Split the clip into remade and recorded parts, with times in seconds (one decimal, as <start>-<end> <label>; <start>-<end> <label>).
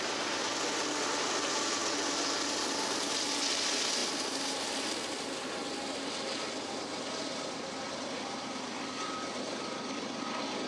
0.0-10.7 recorded